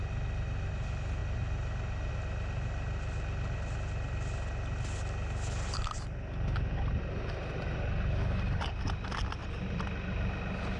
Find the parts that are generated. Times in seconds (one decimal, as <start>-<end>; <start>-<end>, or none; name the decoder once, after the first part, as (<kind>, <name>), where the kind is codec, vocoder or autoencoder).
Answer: none